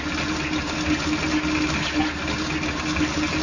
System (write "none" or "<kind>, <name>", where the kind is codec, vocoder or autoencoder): none